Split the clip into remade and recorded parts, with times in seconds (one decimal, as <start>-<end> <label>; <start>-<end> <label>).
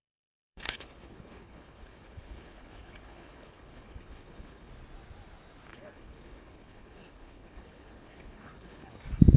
0.0-4.7 remade; 4.7-5.7 recorded; 5.7-8.9 remade; 8.9-9.4 recorded